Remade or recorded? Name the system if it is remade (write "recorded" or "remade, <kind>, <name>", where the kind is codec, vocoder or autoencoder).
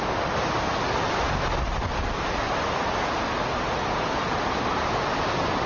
recorded